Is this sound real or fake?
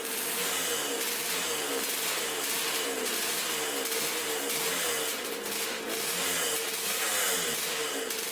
real